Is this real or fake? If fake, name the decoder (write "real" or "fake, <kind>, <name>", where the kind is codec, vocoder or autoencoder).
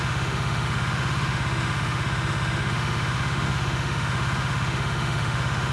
fake, autoencoder, DAC-VAE